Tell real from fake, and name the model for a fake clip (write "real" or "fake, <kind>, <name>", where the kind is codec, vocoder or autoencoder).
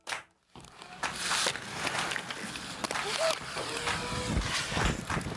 real